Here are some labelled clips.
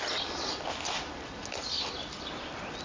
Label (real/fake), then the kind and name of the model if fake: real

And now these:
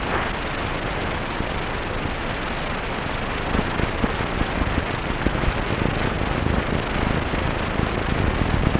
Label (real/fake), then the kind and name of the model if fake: real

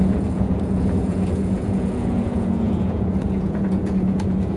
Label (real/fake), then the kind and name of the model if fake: fake, vocoder, Vocos